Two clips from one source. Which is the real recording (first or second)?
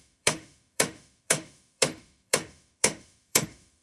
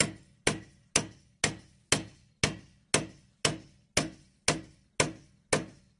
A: second